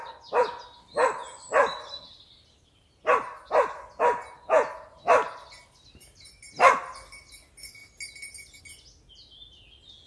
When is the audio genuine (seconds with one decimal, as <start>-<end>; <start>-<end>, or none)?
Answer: 0.0-10.1